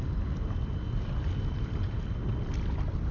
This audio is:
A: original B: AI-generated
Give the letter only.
A